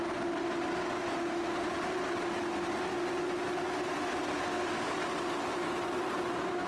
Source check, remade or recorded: recorded